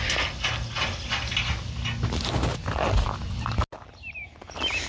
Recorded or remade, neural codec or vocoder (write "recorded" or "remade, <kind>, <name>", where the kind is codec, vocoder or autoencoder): recorded